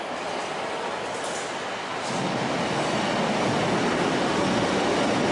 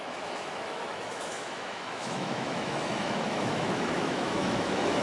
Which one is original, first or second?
first